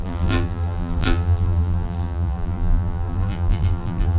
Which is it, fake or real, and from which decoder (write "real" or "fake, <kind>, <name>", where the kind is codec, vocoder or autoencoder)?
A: fake, vocoder, BigVGAN v2